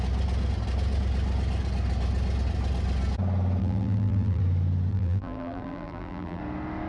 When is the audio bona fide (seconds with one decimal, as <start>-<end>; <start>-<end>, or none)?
0.0-3.6; 4.4-4.9; 6.4-6.9